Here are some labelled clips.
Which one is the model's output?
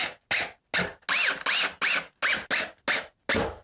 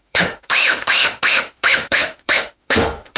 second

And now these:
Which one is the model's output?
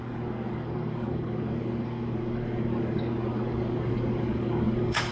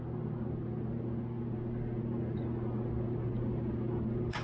first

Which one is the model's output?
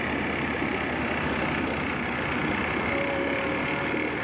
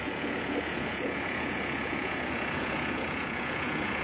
second